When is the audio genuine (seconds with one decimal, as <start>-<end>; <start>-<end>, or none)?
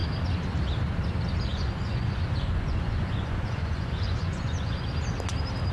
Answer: 0.0-1.5; 4.9-5.7